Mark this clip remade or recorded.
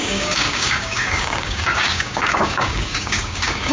remade